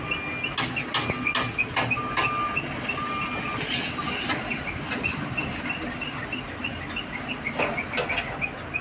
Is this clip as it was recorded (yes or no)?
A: yes